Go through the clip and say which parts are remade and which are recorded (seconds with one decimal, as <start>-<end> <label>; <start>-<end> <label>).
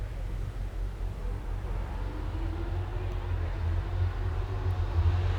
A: 0.0-5.4 recorded